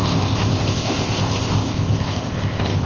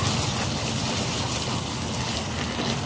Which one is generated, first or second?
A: first